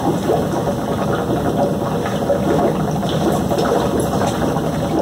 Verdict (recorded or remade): recorded